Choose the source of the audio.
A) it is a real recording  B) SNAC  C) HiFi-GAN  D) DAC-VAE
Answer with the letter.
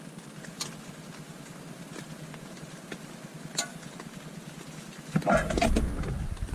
A